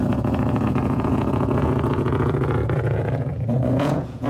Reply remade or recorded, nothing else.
remade